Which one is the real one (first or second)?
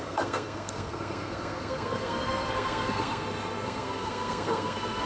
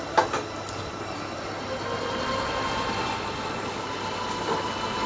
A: second